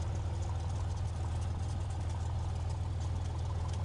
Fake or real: real